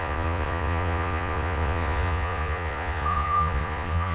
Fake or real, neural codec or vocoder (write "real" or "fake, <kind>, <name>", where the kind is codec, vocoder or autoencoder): fake, vocoder, Vocos